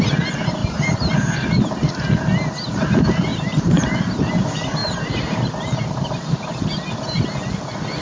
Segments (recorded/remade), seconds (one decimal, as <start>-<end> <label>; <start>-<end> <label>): 0.0-0.6 recorded; 0.6-1.9 remade; 1.9-3.3 recorded; 3.3-3.9 remade; 3.9-4.8 recorded; 4.8-6.7 remade; 6.7-8.0 recorded